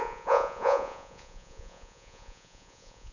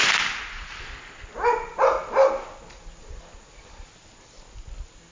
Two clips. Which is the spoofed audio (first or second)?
first